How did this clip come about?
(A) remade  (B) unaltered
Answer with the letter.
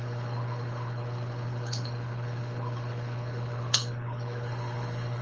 A